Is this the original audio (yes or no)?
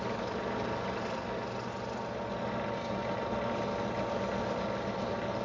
yes